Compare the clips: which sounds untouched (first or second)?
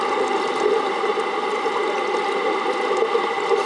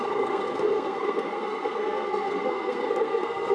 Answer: first